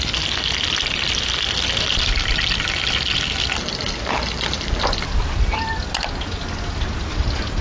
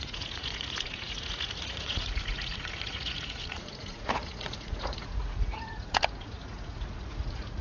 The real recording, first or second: first